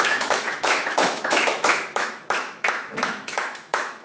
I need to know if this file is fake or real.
fake